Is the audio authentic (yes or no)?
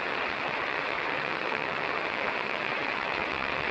no